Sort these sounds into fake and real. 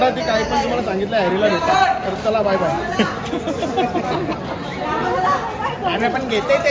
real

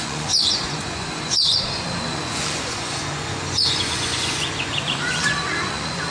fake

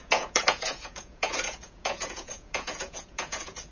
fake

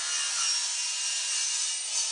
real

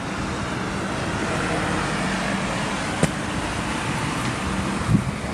real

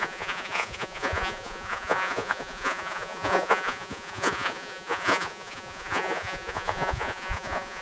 fake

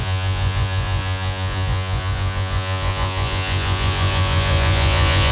fake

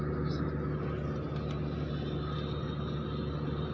real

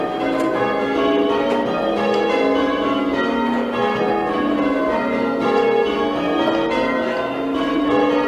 real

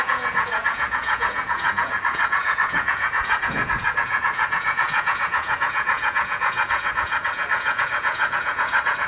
fake